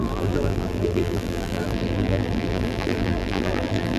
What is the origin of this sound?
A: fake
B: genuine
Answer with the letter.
A